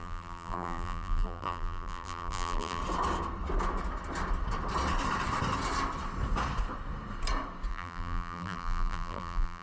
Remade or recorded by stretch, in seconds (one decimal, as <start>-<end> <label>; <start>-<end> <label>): 0.0-2.8 remade; 2.8-7.7 recorded; 7.7-9.6 remade